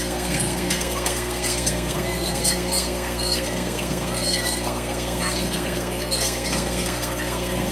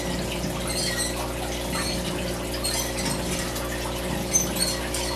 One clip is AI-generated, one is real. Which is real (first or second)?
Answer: second